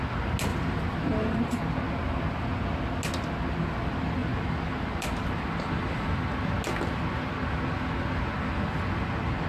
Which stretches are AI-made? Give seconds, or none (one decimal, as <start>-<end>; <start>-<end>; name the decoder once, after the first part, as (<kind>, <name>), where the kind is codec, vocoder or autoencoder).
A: 0.5-1.6 (vocoder, BigVGAN v2)